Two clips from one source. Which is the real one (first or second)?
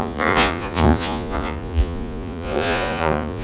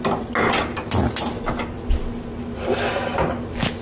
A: second